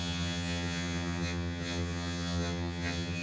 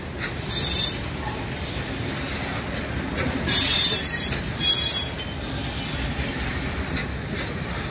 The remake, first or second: first